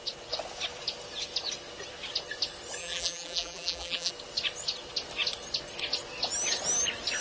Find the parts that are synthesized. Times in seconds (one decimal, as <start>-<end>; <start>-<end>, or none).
2.8-4.1